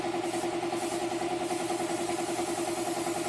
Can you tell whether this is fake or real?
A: real